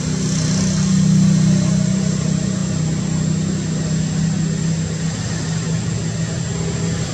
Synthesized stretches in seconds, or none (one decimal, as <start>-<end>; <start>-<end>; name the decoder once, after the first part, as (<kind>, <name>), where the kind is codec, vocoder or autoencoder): none